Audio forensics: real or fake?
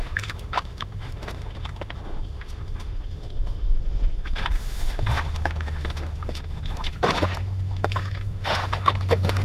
fake